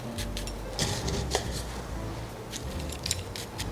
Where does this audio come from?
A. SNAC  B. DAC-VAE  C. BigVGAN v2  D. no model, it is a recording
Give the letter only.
D